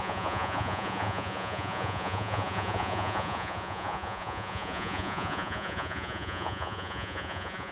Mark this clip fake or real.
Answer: fake